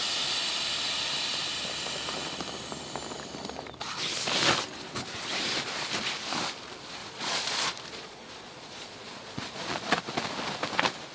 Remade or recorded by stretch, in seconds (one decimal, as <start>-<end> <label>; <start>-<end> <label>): 0.0-7.0 recorded; 7.0-10.0 remade; 10.0-11.1 recorded